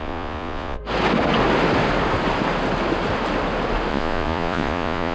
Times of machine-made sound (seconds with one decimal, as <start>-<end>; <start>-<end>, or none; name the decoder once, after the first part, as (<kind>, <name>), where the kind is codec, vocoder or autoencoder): 0.0-0.8 (vocoder, Vocos); 3.9-5.1